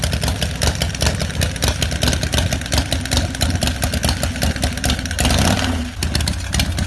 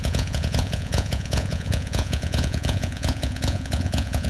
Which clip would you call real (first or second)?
first